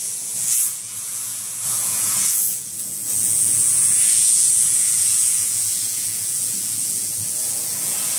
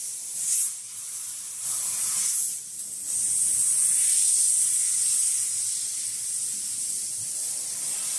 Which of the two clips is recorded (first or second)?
second